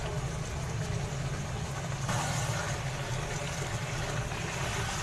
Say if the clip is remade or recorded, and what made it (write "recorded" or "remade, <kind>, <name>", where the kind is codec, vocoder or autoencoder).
recorded